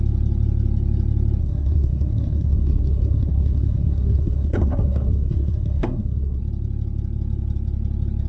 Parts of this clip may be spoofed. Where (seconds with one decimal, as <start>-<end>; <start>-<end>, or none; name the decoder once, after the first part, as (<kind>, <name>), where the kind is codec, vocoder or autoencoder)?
1.4-6.4 (codec, SNAC)